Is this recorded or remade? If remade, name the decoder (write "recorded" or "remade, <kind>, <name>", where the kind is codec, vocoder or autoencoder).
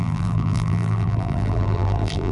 remade, vocoder, BigVGAN v2